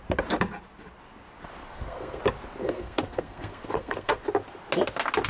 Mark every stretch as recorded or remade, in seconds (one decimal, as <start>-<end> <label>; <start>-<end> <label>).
0.0-1.6 recorded; 1.6-2.2 remade; 2.2-2.6 recorded; 2.6-4.2 remade; 4.2-5.3 recorded